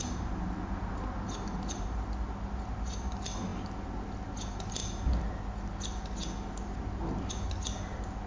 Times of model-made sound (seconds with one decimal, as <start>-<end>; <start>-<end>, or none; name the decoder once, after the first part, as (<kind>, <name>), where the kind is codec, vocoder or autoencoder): none